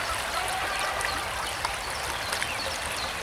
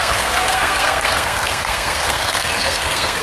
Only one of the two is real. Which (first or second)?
first